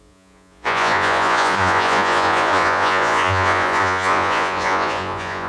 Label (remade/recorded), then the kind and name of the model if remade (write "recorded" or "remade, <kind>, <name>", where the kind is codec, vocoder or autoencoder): remade, vocoder, Vocos